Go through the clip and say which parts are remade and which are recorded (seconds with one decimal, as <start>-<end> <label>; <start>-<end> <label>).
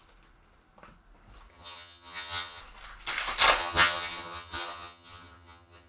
0.0-1.5 recorded; 1.5-2.6 remade; 2.6-3.6 recorded; 3.6-5.9 remade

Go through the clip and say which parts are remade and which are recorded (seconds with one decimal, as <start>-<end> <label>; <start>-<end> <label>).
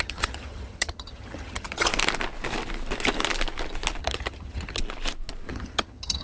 0.0-1.9 remade; 1.9-4.0 recorded; 4.0-4.8 remade; 4.8-5.5 recorded; 5.5-6.2 remade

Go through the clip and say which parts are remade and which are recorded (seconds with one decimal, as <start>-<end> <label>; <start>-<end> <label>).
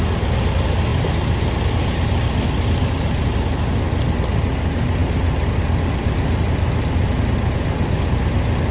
0.0-8.7 recorded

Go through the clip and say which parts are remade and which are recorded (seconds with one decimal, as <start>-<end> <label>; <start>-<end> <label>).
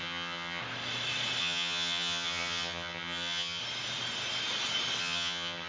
0.0-0.6 remade; 0.6-1.4 recorded; 1.4-3.6 remade; 3.6-5.0 recorded; 5.0-5.7 remade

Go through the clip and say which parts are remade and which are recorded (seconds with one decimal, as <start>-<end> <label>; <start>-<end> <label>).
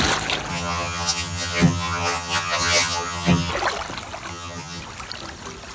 0.0-0.5 recorded; 0.5-3.5 remade; 3.5-4.3 recorded; 4.3-4.8 remade; 4.8-5.7 recorded